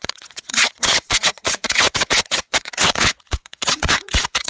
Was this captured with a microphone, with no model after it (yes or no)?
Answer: no